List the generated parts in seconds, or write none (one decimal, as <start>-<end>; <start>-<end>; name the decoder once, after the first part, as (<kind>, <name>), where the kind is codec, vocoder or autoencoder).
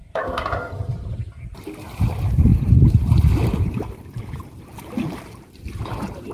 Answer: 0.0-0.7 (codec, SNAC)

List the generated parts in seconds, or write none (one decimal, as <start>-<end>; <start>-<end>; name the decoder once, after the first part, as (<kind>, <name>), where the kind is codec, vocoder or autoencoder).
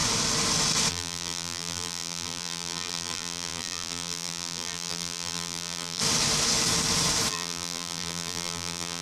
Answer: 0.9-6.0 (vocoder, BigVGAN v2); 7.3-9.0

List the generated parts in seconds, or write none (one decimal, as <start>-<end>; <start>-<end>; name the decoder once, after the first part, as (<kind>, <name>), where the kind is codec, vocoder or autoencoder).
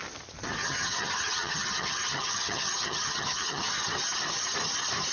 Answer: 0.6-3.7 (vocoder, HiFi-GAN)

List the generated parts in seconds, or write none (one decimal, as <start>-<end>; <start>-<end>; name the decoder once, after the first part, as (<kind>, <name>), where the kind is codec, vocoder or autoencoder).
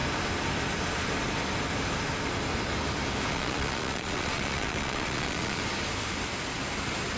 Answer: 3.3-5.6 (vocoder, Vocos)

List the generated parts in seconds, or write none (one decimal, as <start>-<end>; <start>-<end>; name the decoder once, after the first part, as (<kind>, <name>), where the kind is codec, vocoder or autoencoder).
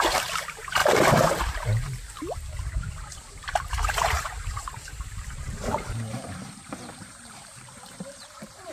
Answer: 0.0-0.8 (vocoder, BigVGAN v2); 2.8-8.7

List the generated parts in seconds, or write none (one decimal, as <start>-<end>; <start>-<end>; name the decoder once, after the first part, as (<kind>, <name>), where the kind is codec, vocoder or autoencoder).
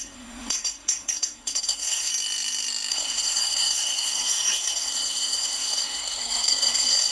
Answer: 0.0-2.1 (codec, SNAC); 2.9-7.1